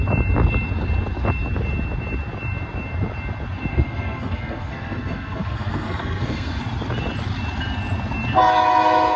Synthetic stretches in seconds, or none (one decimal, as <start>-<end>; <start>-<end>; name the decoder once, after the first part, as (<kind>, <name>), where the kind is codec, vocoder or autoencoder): 3.7-6.6 (codec, SNAC)